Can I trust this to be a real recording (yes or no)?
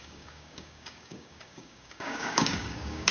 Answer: no